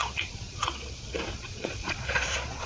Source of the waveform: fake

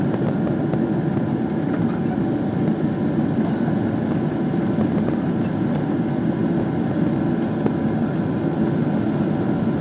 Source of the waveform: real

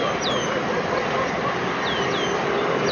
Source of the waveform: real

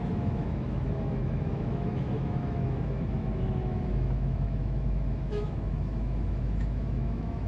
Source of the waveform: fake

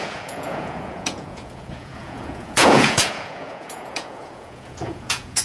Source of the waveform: fake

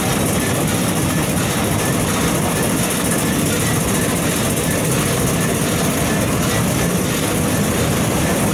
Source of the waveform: real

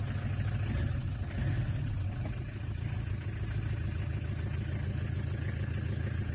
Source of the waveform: real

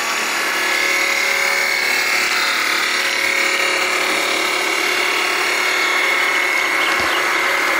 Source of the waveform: real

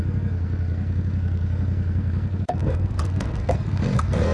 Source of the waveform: fake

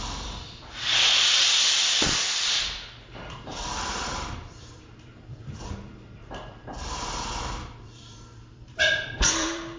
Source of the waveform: fake